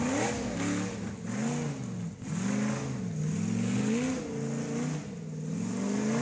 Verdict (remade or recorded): recorded